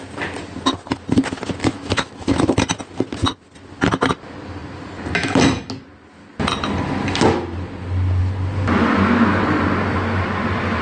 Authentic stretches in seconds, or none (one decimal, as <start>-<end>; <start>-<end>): 0.0-1.6; 2.6-10.8